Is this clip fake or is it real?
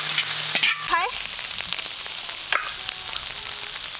real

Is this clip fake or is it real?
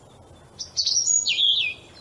real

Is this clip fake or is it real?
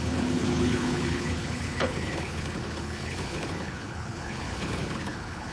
fake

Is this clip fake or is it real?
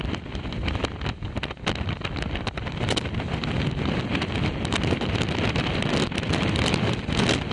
real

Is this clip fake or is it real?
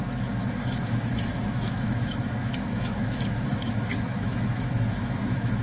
fake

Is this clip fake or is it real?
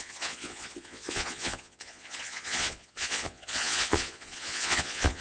fake